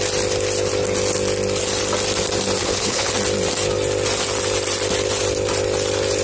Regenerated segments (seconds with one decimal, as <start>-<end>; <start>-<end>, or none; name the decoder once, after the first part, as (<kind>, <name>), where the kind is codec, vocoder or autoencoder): 2.6-3.1 (codec, HILCodec)